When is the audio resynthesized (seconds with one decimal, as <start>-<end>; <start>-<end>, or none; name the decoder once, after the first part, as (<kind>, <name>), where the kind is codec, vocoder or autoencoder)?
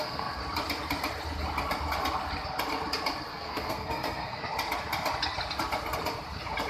0.0-0.4 (codec, SNAC); 3.3-4.4